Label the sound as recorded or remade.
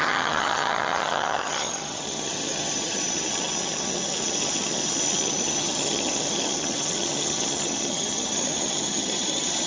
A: remade